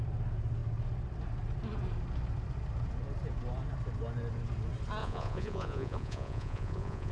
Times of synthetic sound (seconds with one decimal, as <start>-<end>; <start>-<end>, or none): 5.0-7.1